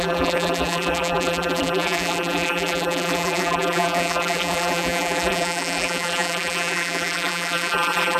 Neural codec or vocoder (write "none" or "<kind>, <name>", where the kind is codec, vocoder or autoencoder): vocoder, BigVGAN v2